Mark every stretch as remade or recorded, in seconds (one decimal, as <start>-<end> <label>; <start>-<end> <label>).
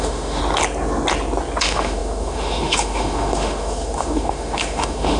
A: 0.0-0.4 remade; 0.4-1.6 recorded; 1.6-5.2 remade